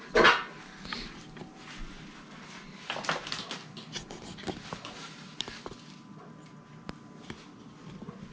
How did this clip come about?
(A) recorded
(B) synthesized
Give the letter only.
A